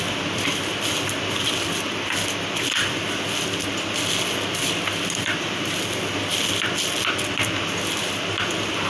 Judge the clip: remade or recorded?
recorded